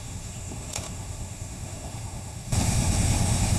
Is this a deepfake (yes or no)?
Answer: yes